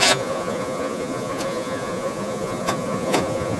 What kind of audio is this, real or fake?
fake